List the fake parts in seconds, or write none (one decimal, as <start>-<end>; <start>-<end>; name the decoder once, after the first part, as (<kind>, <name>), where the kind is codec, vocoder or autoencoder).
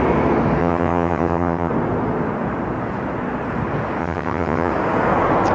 0.6-1.7 (vocoder, HiFi-GAN); 4.0-4.7